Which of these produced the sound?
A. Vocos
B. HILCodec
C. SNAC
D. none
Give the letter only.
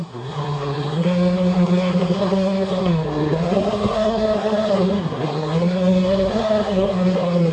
C